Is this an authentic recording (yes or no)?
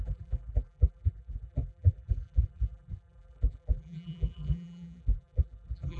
no